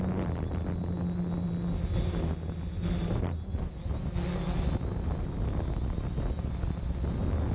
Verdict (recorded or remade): recorded